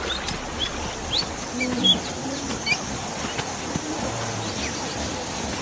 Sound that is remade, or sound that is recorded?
recorded